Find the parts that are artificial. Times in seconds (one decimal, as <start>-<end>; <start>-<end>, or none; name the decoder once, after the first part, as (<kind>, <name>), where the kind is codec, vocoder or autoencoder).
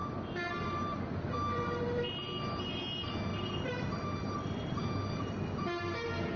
0.0-1.0 (vocoder, BigVGAN v2); 3.3-5.3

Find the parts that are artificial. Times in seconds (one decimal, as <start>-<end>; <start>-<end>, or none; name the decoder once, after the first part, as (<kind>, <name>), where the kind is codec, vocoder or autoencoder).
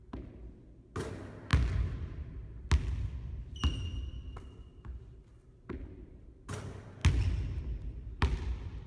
3.9-4.8 (vocoder, BigVGAN v2)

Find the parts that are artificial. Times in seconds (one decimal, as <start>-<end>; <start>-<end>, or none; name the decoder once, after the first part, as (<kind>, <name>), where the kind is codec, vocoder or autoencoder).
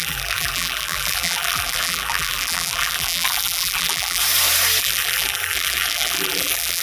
0.0-4.2 (vocoder, BigVGAN v2); 4.8-6.8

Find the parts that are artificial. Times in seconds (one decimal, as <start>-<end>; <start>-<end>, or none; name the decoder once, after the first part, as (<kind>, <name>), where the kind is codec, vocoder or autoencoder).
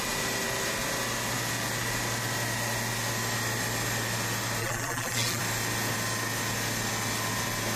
4.6-5.4 (vocoder, BigVGAN v2)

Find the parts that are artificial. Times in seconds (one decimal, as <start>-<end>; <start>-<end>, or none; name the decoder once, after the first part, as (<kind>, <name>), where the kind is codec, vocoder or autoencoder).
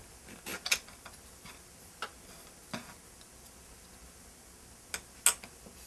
none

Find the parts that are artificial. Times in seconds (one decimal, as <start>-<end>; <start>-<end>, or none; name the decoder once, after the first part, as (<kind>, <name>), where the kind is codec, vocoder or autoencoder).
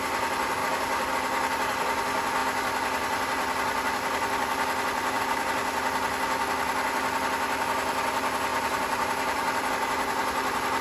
8.5-9.7 (vocoder, BigVGAN v2)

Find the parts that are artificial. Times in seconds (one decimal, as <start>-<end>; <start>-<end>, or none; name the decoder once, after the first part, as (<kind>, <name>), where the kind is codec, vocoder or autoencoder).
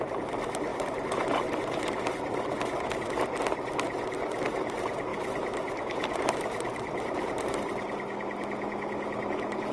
0.7-1.6 (vocoder, BigVGAN v2); 5.1-7.4